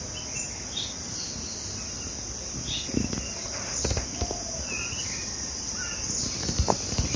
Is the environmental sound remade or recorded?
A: recorded